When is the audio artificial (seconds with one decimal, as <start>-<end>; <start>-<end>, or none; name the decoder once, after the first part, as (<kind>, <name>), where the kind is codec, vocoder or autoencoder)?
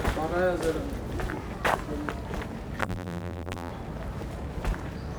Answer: 2.8-3.7 (vocoder, BigVGAN v2)